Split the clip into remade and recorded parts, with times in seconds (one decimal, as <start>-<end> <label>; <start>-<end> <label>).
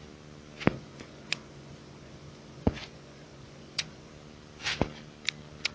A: 0.0-0.7 recorded; 0.7-4.1 remade; 4.1-5.7 recorded